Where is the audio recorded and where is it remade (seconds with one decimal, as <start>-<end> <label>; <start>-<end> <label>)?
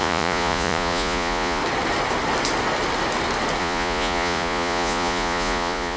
0.0-1.6 remade; 1.6-3.6 recorded; 3.6-6.0 remade